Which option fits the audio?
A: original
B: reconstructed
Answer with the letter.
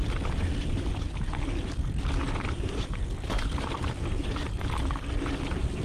A